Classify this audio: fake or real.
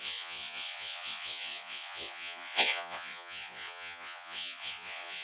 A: fake